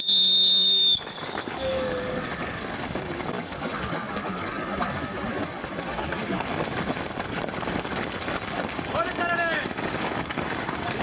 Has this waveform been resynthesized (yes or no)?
yes